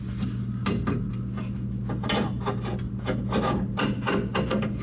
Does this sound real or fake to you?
real